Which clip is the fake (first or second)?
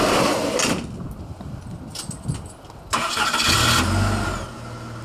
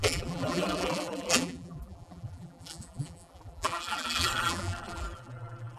second